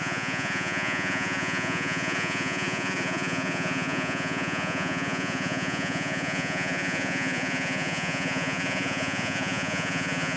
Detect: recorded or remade remade